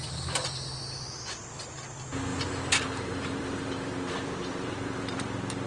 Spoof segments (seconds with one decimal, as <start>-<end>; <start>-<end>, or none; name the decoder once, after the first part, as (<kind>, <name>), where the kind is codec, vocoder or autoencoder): 2.3-5.7 (vocoder, BigVGAN v2)

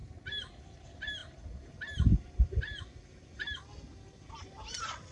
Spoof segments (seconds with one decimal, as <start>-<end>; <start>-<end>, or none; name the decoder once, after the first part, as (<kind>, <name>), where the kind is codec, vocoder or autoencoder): 0.7-1.2 (vocoder, BigVGAN v2); 4.3-5.1

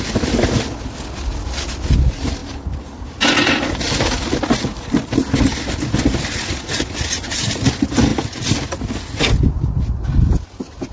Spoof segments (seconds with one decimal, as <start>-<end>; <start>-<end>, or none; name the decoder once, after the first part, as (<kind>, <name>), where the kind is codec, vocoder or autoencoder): none

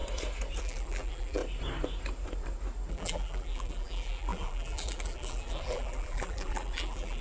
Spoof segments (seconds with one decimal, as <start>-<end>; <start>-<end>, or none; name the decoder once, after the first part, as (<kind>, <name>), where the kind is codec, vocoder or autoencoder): 0.6-1.4 (vocoder, BigVGAN v2); 2.9-7.2

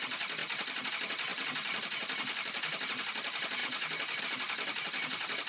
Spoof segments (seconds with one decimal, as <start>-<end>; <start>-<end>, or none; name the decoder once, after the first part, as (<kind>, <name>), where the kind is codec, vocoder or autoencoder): 1.3-3.0 (vocoder, BigVGAN v2)